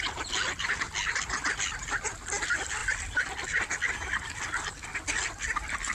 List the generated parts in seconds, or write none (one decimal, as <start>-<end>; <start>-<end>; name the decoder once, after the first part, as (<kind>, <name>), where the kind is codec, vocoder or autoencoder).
none

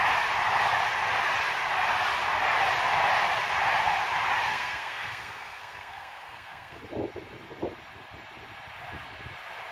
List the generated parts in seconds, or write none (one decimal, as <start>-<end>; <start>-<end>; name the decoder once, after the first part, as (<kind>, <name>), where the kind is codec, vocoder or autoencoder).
4.5-6.8 (codec, SNAC)